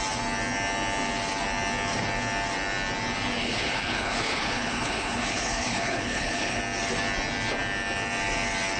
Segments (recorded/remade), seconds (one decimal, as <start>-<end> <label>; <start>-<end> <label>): 0.0-3.4 recorded; 3.4-6.6 remade; 6.6-8.8 recorded